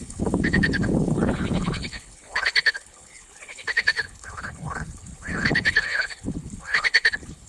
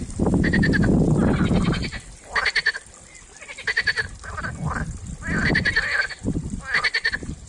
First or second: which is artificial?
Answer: first